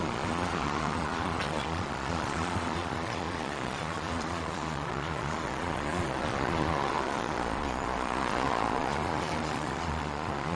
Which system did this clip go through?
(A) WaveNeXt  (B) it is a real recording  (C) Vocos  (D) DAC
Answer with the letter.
C